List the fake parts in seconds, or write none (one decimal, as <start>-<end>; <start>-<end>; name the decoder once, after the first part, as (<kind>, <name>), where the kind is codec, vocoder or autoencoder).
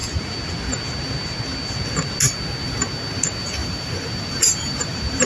3.6-5.3 (vocoder, BigVGAN v2)